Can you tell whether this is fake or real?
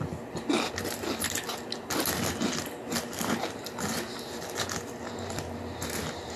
real